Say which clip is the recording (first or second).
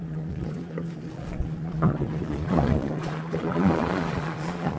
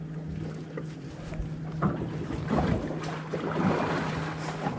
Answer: second